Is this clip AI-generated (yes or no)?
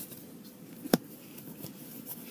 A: no